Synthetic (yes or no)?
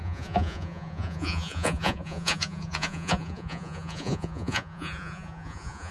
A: yes